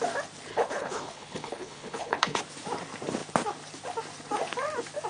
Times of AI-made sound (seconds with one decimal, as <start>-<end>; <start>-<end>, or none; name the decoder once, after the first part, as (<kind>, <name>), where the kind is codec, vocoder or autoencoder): 0.5-2.4 (codec, HILCodec)